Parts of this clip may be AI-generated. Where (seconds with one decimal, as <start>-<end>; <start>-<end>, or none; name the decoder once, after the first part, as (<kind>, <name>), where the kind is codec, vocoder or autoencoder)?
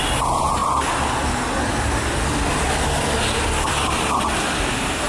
none